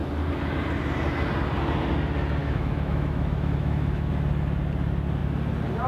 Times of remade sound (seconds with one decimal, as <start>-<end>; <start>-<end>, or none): 2.4-4.1